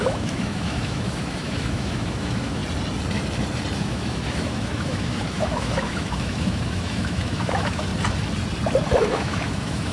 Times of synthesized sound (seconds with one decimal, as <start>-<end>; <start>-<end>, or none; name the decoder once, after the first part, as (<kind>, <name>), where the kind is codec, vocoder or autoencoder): 0.0-2.6 (autoencoder, DAC-VAE); 3.8-7.9; 9.0-9.9